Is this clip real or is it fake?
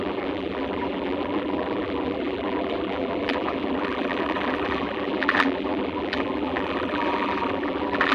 fake